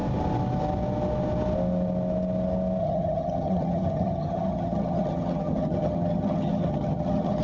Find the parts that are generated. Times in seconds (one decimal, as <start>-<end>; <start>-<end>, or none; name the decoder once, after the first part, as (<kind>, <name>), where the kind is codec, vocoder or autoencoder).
2.8-7.4 (vocoder, HiFi-GAN)